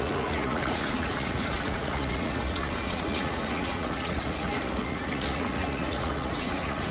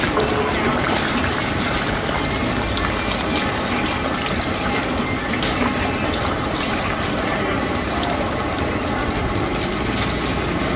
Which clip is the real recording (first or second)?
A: second